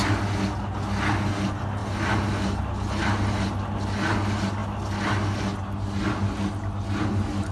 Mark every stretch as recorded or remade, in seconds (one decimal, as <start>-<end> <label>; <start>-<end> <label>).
0.0-7.5 recorded